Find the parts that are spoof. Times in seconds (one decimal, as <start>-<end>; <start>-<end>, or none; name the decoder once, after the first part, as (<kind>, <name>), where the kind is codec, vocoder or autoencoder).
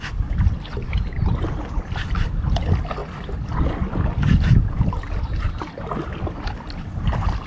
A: none